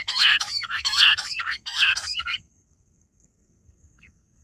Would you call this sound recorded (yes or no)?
no